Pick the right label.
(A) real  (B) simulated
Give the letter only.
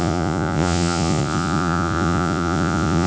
B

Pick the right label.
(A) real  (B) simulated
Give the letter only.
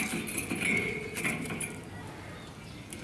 A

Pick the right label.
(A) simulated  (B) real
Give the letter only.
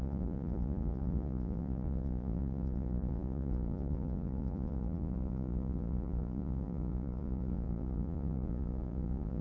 A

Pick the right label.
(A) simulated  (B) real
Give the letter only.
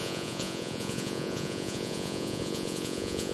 A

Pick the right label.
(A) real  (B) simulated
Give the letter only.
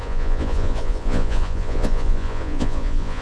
B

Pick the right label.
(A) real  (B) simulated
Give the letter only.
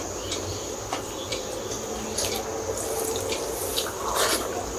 A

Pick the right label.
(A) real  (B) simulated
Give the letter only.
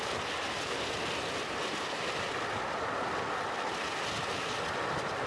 A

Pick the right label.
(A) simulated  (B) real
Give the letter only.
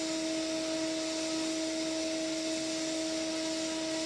B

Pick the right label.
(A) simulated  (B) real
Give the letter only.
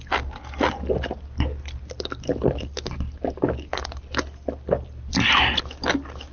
B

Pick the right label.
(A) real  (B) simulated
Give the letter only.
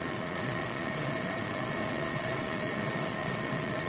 B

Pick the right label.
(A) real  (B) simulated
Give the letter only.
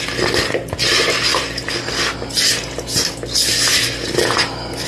A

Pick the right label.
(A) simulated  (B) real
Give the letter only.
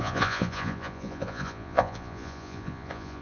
A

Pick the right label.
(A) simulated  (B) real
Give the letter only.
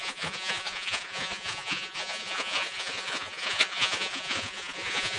A